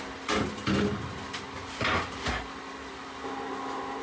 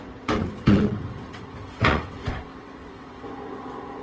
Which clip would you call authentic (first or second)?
first